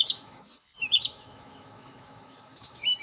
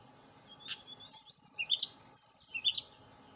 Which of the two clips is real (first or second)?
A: second